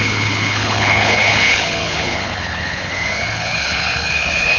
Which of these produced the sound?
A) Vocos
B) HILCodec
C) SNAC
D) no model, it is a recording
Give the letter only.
B